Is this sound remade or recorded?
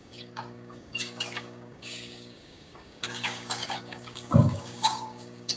remade